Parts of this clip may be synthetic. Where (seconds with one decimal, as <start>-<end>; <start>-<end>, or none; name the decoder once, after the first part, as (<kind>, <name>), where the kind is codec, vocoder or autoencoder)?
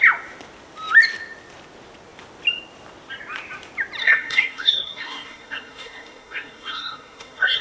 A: 4.0-7.6 (codec, SNAC)